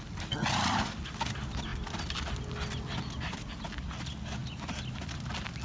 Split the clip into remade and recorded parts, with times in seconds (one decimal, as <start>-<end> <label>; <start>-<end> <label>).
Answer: 0.0-5.6 recorded